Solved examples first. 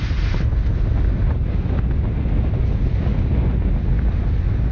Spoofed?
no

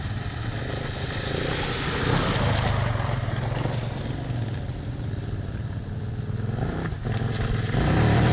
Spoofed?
no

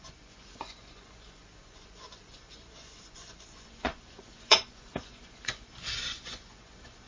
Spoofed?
yes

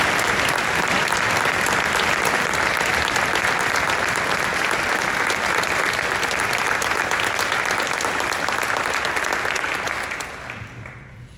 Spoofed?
no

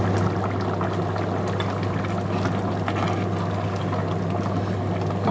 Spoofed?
no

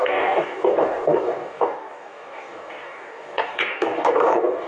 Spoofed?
yes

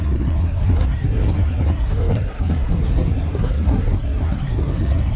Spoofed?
yes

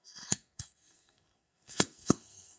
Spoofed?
yes